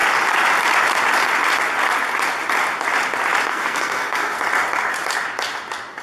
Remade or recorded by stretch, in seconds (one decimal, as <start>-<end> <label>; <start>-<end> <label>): 0.0-3.5 recorded; 3.5-4.4 remade; 4.4-6.0 recorded